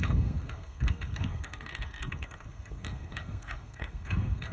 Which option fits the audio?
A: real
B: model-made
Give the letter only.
B